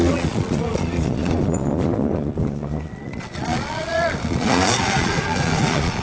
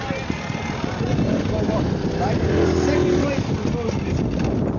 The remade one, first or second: first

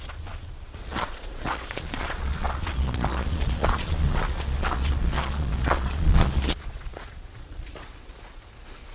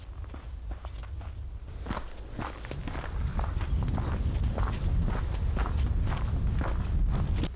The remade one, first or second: first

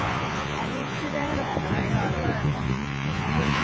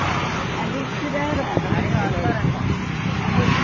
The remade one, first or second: first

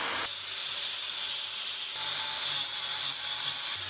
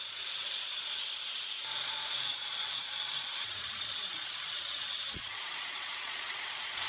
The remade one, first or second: second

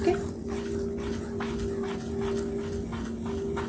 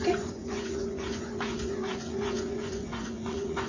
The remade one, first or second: second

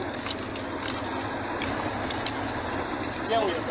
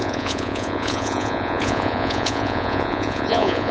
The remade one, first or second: second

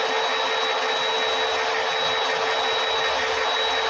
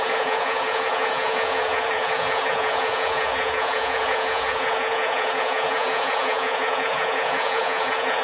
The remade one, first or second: second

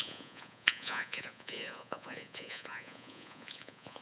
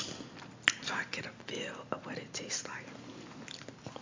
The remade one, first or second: first